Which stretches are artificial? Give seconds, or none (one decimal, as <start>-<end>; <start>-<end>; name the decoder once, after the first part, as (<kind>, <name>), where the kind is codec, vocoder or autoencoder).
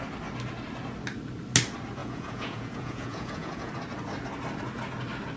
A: 2.0-3.7 (vocoder, Vocos)